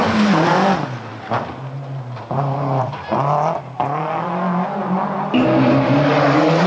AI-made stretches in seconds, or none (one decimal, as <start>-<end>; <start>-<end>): 0.0-0.5; 1.1-3.0